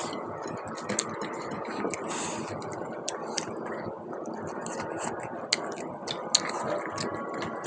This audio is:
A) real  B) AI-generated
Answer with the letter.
A